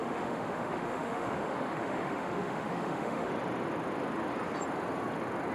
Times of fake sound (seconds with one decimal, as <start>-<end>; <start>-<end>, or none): 0.0-3.3